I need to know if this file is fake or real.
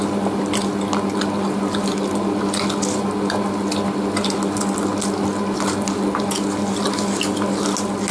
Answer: real